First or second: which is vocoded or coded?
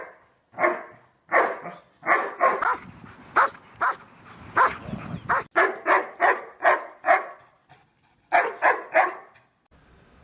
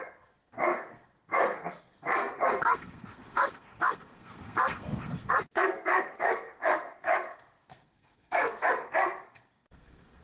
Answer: second